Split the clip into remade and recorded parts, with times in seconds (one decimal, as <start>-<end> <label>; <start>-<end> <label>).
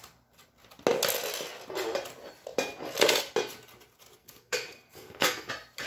0.0-4.2 recorded; 4.2-5.5 remade; 5.5-5.9 recorded